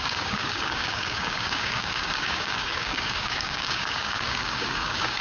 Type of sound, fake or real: fake